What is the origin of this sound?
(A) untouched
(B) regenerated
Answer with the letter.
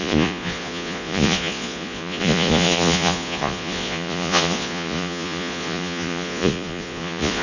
B